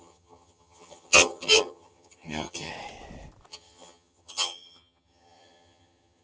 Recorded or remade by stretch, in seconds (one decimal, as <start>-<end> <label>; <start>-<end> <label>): 0.0-2.7 remade; 2.7-3.5 recorded; 3.5-6.2 remade